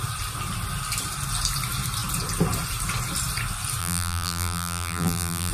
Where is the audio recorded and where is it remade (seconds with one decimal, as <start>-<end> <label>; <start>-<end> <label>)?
0.0-3.8 recorded; 3.8-5.5 remade